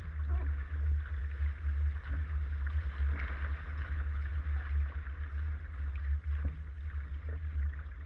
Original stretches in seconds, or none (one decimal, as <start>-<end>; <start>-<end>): 0.0-3.7; 4.4-8.1